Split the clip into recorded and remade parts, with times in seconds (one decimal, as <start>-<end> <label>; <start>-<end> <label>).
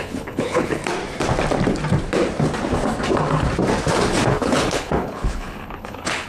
0.0-0.8 remade; 0.8-4.3 recorded; 4.3-6.3 remade